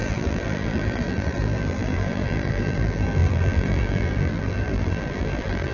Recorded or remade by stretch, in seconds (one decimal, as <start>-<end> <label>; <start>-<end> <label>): 0.0-5.7 remade